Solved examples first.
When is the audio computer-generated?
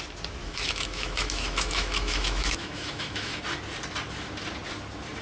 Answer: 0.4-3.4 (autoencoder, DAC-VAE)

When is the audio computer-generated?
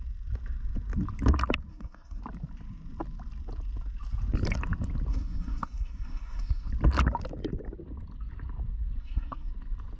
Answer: 1.7-2.2 (codec, SNAC); 5.1-6.7; 9.0-9.5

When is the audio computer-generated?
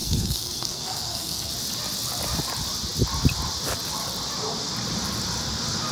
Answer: 0.0-1.5 (codec, SNAC)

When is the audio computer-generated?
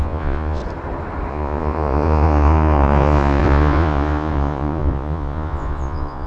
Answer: 0.0-0.6 (vocoder, Vocos); 1.3-6.3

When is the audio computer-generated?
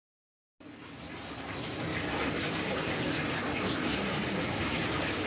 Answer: 1.9-5.3 (vocoder, BigVGAN v2)